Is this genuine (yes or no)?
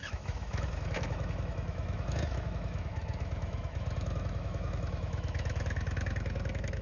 no